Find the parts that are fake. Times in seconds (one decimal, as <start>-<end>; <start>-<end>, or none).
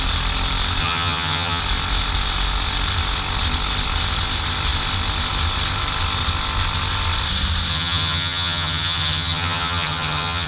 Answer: 0.8-1.6; 7.7-10.5